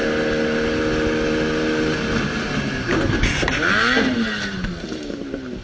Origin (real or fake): real